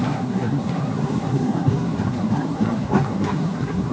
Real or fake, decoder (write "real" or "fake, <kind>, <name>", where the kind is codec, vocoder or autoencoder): fake, codec, SNAC